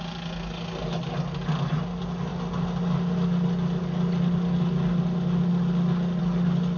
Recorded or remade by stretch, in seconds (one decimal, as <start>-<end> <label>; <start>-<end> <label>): 0.0-6.8 recorded